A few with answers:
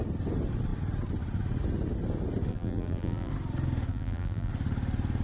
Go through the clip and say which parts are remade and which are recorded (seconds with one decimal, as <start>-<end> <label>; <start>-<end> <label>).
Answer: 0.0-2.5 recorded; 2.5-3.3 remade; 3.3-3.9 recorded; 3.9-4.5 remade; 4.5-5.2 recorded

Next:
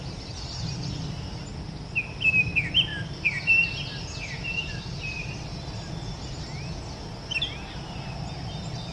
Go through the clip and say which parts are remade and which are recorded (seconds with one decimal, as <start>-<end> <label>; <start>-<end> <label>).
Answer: 0.0-1.5 recorded; 1.5-2.3 remade; 2.3-2.9 recorded; 2.9-6.4 remade; 6.4-8.9 recorded

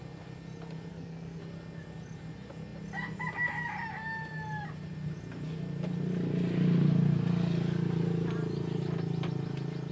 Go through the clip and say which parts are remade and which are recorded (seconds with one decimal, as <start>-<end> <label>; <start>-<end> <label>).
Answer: 0.0-0.9 recorded; 0.9-1.4 remade; 1.4-9.9 recorded

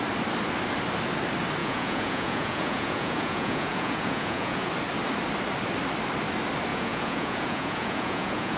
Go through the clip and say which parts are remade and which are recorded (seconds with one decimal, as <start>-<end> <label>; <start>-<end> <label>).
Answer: 0.0-1.6 recorded; 1.6-4.7 remade; 4.7-6.7 recorded; 6.7-8.6 remade

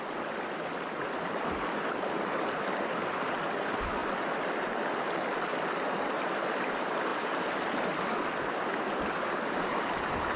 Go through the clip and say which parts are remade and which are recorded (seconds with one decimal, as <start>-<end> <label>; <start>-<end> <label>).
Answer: 0.0-10.4 recorded

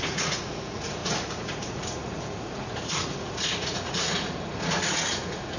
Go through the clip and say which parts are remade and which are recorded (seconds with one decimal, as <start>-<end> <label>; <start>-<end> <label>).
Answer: 0.0-5.6 remade